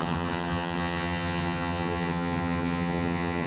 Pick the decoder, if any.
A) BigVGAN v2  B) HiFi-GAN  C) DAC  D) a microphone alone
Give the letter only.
B